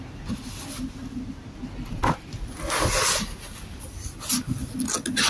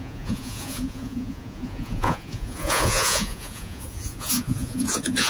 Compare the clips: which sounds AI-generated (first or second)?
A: second